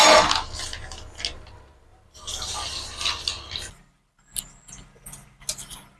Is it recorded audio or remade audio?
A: recorded